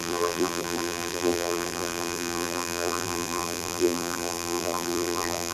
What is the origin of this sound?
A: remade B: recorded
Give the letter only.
A